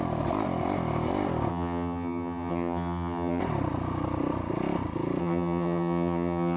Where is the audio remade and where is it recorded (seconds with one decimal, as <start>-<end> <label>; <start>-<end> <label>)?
0.0-1.5 recorded; 1.5-3.4 remade; 3.4-5.2 recorded; 5.2-6.6 remade